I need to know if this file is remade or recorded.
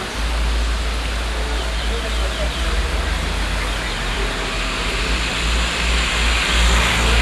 recorded